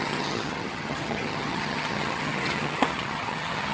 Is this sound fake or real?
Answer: fake